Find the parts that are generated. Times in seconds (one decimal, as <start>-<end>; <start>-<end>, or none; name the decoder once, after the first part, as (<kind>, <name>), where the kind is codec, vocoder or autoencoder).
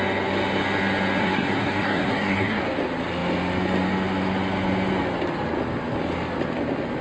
1.2-2.6 (codec, SNAC)